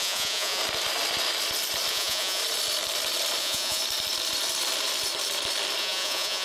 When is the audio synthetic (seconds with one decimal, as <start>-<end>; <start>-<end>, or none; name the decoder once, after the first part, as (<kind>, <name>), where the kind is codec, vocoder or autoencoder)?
0.0-0.6 (vocoder, Vocos); 1.9-2.4; 3.4-3.8; 5.8-6.4